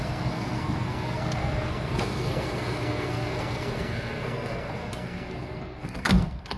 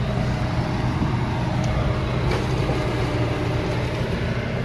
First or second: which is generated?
first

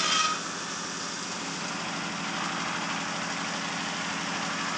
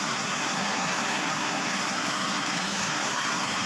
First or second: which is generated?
second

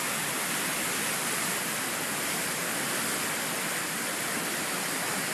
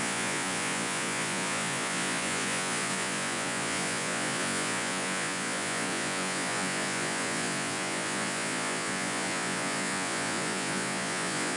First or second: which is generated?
second